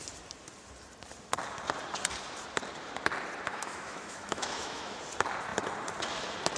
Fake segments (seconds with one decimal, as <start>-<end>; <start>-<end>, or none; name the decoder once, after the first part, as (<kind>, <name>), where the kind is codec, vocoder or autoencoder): 3.5-5.0 (autoencoder, DAC-VAE)